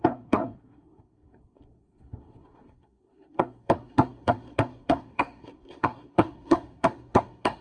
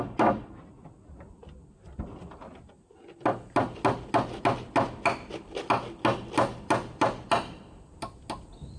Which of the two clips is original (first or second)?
second